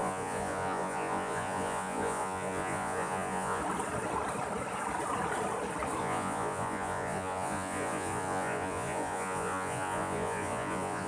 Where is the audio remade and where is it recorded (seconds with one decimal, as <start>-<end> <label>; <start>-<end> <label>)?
0.0-3.6 remade; 3.6-6.0 recorded; 6.0-11.1 remade